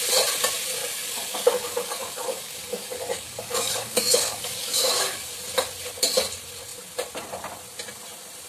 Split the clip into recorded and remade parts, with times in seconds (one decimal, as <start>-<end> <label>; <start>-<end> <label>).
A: 0.0-0.8 recorded; 0.8-5.3 remade; 5.3-8.5 recorded